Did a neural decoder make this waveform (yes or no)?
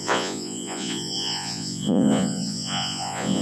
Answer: yes